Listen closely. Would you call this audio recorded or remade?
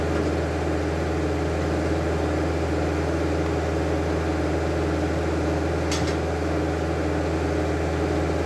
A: recorded